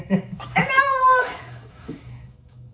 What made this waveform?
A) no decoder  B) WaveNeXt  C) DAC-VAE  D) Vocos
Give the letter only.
C